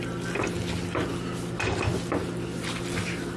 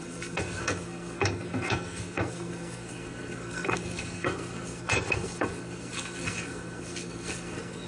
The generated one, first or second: second